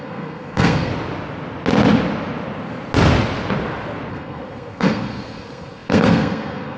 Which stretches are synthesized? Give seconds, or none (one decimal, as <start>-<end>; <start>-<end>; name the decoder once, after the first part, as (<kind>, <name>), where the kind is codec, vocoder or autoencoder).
0.0-0.9 (codec, SNAC); 4.1-6.8